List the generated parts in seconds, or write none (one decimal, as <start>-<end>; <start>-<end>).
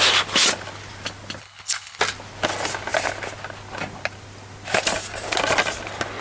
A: 1.4-2.0